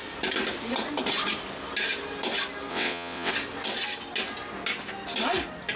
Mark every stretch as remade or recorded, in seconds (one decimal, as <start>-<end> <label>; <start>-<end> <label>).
0.0-2.7 recorded; 2.7-3.3 remade; 3.3-5.8 recorded